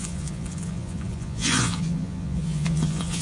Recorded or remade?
remade